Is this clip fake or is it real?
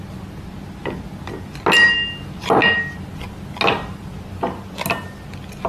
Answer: real